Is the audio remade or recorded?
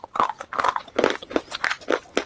recorded